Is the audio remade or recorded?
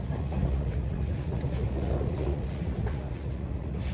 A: remade